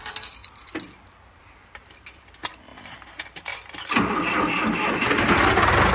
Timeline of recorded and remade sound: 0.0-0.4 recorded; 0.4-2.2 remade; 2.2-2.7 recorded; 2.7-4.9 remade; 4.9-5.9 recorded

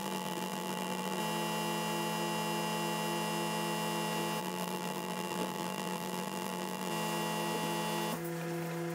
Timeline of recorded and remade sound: 0.0-1.2 remade; 1.2-4.4 recorded; 4.4-6.9 remade; 6.9-8.9 recorded

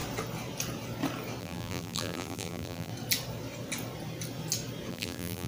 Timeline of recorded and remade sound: 0.0-1.4 recorded; 1.4-2.9 remade; 2.9-4.9 recorded; 4.9-5.5 remade